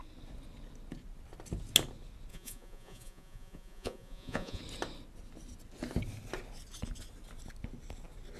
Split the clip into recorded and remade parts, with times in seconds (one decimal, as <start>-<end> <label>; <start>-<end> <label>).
0.0-2.3 recorded; 2.3-4.6 remade; 4.6-8.4 recorded